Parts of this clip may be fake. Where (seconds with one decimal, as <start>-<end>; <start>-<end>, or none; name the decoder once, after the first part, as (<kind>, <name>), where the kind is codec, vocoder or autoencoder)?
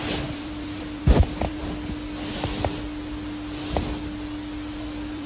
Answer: 0.0-1.6 (vocoder, BigVGAN v2); 4.8-5.3